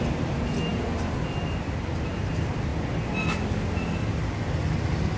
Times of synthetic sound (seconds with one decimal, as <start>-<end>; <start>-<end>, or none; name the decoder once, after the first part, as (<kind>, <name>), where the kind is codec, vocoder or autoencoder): none